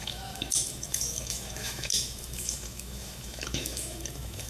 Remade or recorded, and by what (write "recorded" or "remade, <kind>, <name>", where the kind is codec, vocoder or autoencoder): remade, autoencoder, DAC-VAE